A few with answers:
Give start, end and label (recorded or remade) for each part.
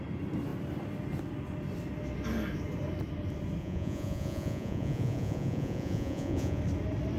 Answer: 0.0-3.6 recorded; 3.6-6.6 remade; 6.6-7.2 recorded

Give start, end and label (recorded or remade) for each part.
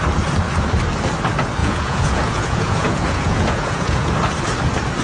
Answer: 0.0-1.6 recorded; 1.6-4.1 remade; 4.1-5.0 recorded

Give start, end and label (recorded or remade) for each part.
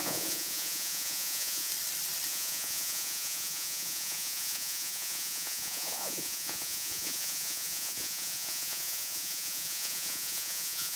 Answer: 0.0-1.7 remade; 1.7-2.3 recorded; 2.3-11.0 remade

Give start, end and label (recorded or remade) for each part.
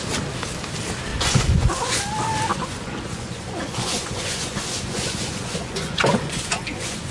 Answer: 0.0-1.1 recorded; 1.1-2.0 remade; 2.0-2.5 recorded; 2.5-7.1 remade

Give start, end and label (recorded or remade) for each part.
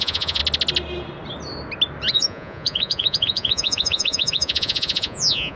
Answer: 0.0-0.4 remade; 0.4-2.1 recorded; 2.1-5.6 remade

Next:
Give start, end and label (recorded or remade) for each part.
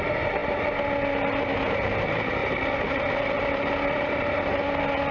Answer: 0.0-5.1 recorded